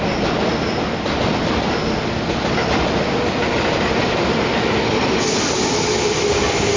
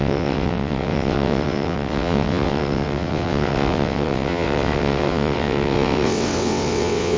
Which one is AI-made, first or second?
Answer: second